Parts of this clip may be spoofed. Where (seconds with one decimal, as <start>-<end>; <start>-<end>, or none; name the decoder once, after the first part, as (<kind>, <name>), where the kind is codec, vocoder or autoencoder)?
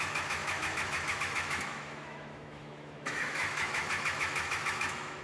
0.0-5.2 (autoencoder, DAC-VAE)